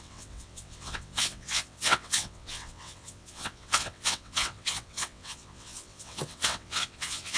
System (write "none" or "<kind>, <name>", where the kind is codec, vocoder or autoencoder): vocoder, WaveNeXt